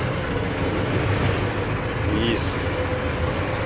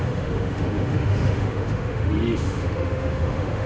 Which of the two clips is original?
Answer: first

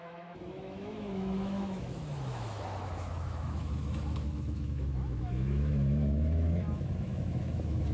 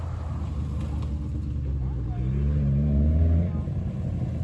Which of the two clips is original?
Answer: second